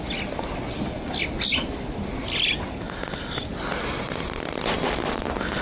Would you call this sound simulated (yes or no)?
no